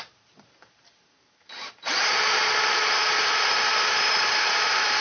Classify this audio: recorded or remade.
remade